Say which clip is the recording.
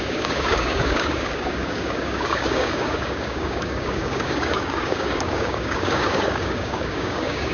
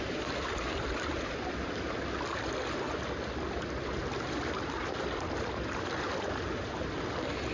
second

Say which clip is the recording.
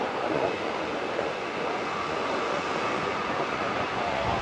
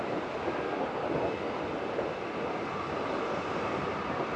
second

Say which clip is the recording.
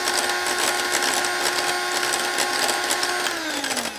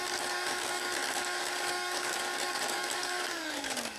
first